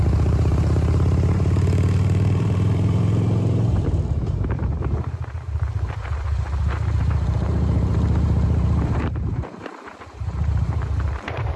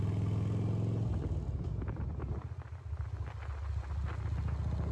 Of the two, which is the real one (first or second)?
second